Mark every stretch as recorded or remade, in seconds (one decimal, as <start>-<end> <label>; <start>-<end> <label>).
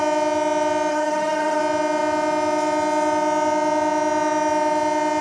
0.0-0.9 recorded; 0.9-1.6 remade; 1.6-5.2 recorded